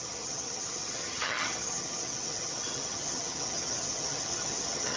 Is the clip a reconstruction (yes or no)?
yes